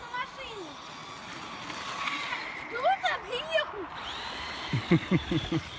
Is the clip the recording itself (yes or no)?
yes